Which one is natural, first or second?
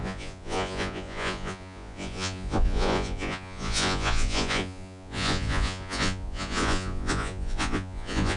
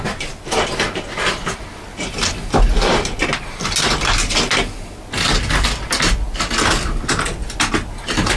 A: second